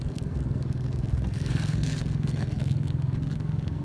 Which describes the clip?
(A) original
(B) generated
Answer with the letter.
B